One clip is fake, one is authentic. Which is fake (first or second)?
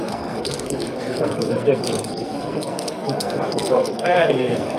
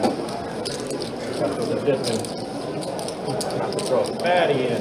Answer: first